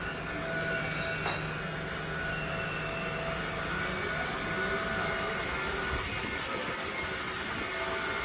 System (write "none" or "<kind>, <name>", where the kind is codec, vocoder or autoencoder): none